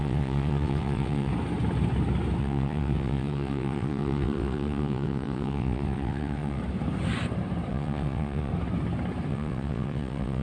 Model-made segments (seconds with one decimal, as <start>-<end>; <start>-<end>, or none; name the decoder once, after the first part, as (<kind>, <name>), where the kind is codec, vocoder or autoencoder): 0.0-1.3 (vocoder, WaveNeXt); 2.4-6.6; 7.7-8.5; 9.3-10.4